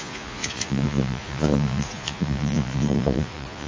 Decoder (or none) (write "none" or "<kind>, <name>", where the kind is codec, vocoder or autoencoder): vocoder, Vocos